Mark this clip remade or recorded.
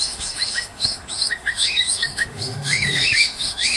remade